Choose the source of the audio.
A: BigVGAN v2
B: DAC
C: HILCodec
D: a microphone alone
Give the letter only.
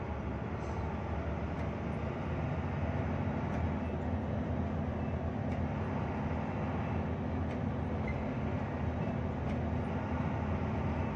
D